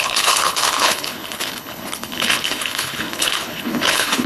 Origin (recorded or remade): remade